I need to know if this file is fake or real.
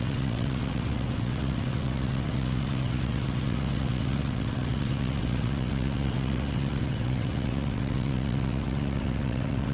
fake